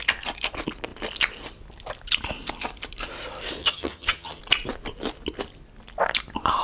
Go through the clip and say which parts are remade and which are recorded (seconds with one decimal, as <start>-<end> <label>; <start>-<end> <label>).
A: 0.0-3.6 recorded; 3.6-4.4 remade; 4.4-6.6 recorded